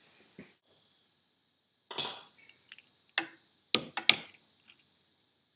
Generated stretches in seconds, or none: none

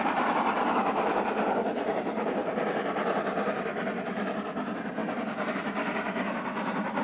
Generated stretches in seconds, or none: none

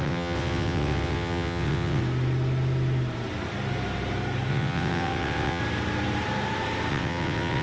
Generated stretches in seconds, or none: 0.0-2.0 (vocoder, WaveNeXt); 4.5-5.6; 6.9-7.6

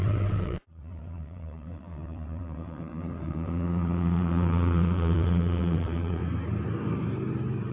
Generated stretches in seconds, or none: 0.0-6.2 (vocoder, WaveNeXt)

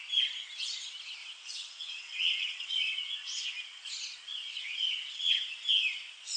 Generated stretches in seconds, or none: 1.2-3.9 (vocoder, WaveNeXt); 4.3-5.4

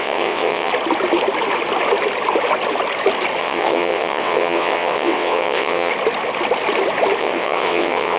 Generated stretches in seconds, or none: 0.0-0.7 (vocoder, WaveNeXt); 3.4-5.9; 7.2-8.2

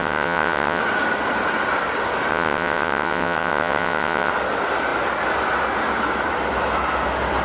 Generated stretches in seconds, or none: 0.0-0.8 (vocoder, WaveNeXt); 2.3-4.3

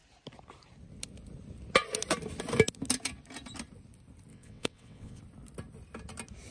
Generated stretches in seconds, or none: 4.3-5.2 (vocoder, WaveNeXt)